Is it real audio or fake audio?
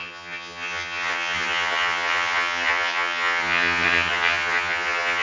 fake